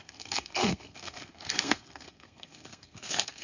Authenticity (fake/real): fake